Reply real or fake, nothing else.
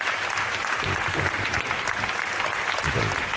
real